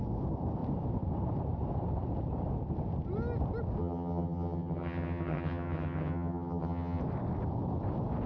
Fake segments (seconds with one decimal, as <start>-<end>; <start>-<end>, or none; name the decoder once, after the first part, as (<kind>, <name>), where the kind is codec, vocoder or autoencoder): 3.8-7.0 (vocoder, HiFi-GAN)